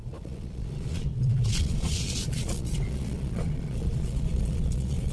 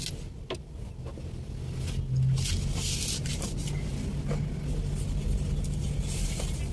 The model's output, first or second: first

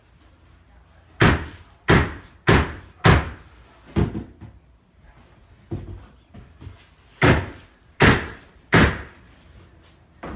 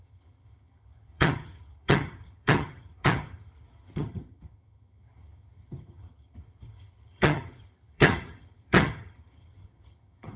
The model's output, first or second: second